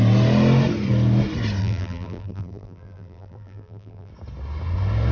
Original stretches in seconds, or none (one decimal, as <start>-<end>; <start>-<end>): 0.0-1.6; 4.1-5.1